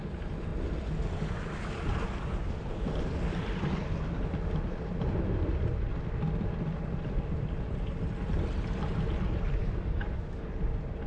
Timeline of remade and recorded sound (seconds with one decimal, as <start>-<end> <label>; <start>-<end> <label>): 0.0-9.6 recorded; 9.6-10.5 remade; 10.5-11.1 recorded